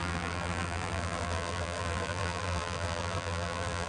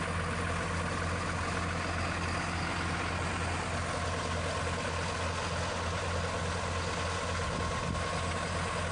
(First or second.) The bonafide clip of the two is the second